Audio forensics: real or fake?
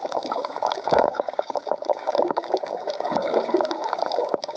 fake